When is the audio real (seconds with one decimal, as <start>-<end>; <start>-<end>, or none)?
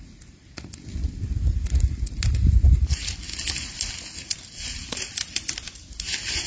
0.0-6.5